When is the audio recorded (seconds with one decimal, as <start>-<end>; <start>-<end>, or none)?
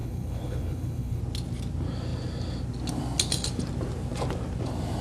1.2-5.0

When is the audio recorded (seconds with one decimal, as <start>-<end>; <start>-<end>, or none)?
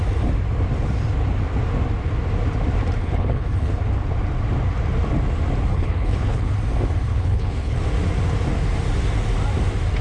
0.0-3.0; 3.8-5.7; 6.5-7.1; 7.8-10.0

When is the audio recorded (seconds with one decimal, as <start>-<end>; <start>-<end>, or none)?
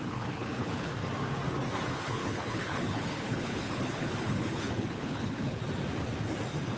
0.9-1.9; 5.6-6.8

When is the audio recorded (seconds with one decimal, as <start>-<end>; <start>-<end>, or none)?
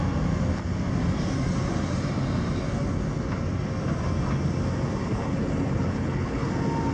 0.0-5.0; 6.5-6.9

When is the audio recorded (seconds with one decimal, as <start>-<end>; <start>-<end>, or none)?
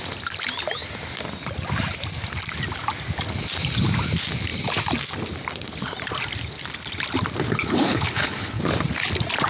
0.0-7.6; 8.6-9.5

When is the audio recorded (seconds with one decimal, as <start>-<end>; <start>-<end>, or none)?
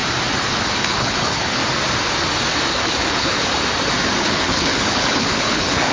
0.0-0.8; 1.6-2.7; 3.5-4.2